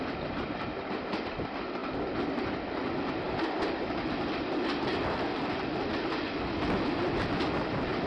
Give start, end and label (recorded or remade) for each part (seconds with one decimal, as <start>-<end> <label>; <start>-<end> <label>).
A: 0.0-1.8 recorded; 1.8-5.9 remade; 5.9-8.1 recorded